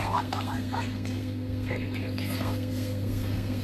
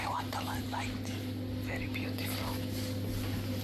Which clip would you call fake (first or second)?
first